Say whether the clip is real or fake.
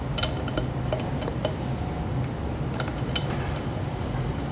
real